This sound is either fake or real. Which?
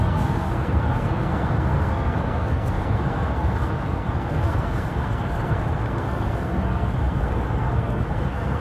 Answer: fake